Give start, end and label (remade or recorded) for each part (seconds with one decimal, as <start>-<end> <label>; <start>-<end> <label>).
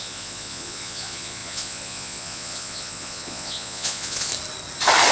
0.0-4.3 remade; 4.3-5.1 recorded